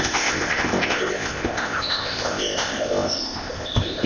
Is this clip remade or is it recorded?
remade